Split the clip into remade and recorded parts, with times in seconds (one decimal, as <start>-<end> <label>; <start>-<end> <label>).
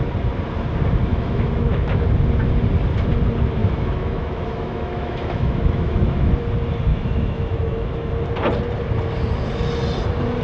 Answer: 0.0-1.1 recorded; 1.1-2.0 remade; 2.0-3.6 recorded; 3.6-6.3 remade; 6.3-6.9 recorded; 6.9-8.1 remade; 8.1-10.4 recorded